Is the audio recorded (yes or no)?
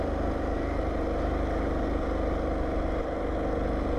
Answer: yes